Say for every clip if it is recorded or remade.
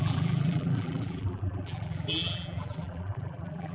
remade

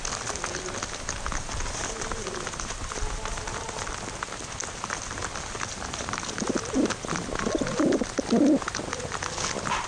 recorded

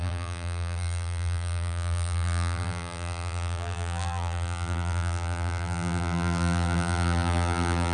remade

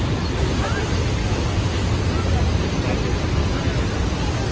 recorded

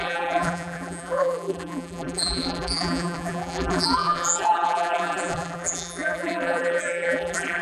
remade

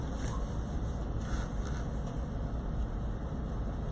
recorded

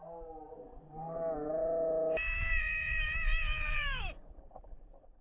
remade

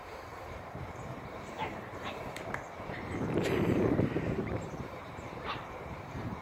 remade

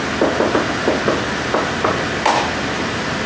recorded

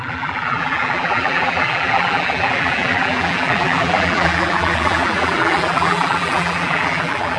remade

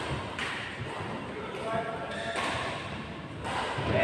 recorded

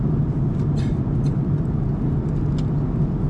recorded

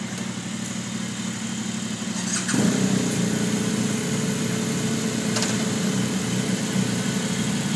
recorded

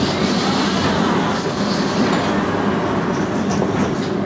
recorded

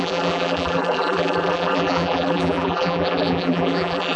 remade